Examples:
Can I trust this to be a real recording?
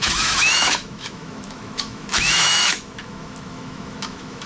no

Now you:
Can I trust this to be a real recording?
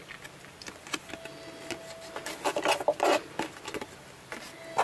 yes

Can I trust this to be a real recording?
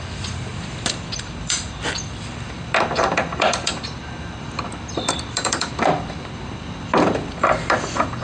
no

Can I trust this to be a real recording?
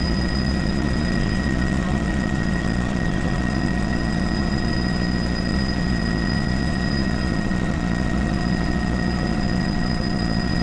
no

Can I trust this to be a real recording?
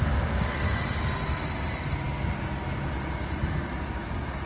yes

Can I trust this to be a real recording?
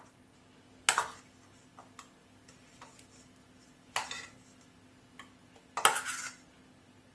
yes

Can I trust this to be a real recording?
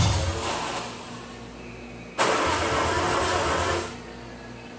yes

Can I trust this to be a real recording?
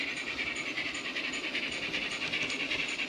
yes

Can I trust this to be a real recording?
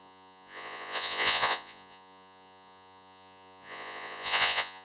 no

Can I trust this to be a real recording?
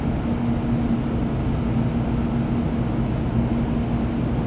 yes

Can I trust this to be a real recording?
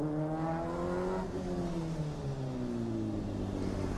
yes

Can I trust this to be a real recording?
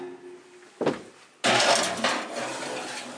yes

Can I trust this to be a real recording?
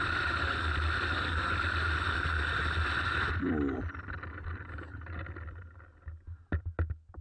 yes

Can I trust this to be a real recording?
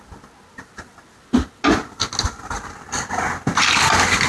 yes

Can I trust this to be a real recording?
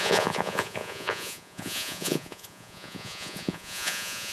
no